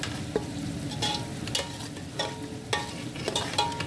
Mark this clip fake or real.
real